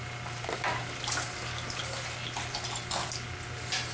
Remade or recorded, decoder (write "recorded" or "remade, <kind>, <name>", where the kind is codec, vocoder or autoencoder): recorded